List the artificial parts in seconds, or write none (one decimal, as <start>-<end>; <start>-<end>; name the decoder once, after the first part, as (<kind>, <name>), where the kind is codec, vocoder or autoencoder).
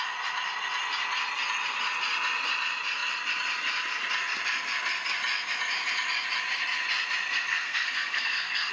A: 7.5-8.7 (codec, SNAC)